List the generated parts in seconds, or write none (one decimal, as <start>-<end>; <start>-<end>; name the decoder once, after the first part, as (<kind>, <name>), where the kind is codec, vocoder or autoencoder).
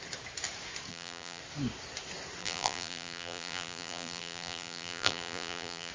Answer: 0.9-1.4 (vocoder, BigVGAN v2); 2.4-5.9